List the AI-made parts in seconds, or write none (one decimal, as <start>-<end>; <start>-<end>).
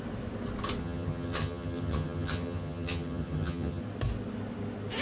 0.8-3.8